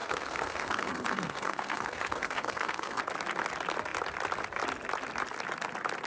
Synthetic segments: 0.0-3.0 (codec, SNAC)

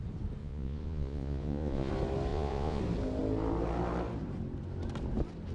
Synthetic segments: 0.4-1.9 (vocoder, Vocos); 2.3-2.8

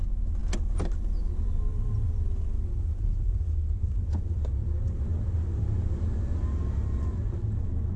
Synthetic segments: 1.7-4.4 (vocoder, BigVGAN v2)

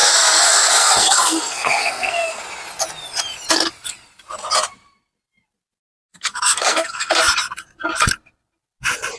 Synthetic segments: 0.0-2.4 (codec, SNAC); 6.1-7.2